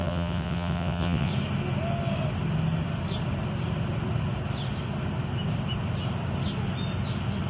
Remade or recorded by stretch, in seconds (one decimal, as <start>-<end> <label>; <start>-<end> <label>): 0.0-1.3 remade; 1.3-7.5 recorded